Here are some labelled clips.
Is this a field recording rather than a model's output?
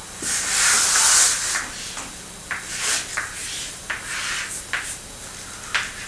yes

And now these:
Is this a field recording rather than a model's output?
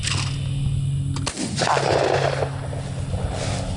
yes